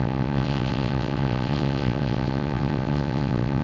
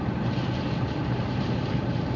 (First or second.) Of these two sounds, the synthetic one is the first